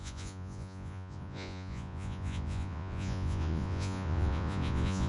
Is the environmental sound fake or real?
fake